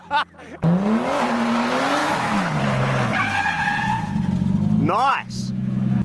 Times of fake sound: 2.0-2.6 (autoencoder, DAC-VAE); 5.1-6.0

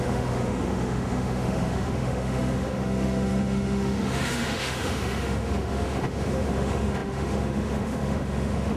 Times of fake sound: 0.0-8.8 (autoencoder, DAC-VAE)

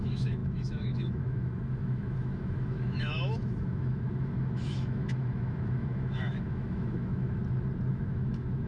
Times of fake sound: 0.0-7.4 (autoencoder, DAC-VAE); 7.9-8.7

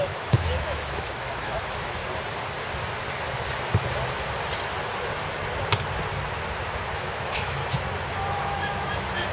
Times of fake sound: 0.0-2.0 (autoencoder, DAC-VAE); 6.9-7.6; 8.3-9.3

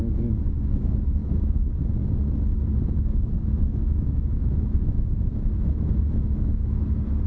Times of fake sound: 0.0-1.2 (autoencoder, DAC-VAE); 3.3-7.3

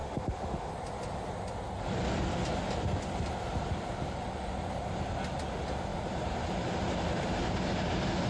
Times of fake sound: 0.0-0.7 (autoencoder, DAC-VAE)